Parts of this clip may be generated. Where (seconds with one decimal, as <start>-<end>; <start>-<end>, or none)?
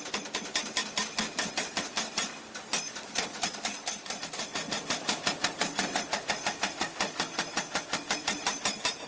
none